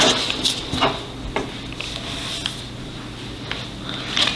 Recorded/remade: recorded